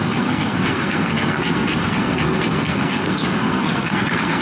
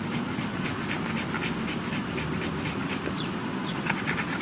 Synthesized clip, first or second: first